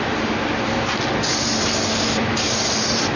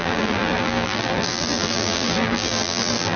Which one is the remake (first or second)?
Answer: second